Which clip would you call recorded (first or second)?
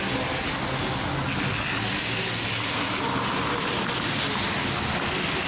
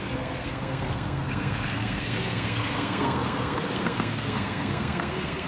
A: first